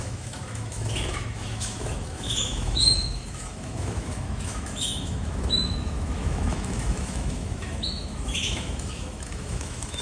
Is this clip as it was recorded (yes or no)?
no